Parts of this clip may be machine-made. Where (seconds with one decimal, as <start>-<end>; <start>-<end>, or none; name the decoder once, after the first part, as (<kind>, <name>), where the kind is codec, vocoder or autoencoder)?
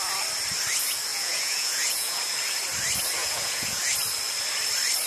1.1-2.2 (vocoder, Vocos); 3.2-3.8